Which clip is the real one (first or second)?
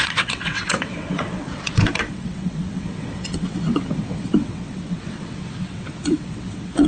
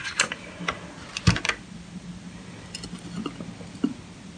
second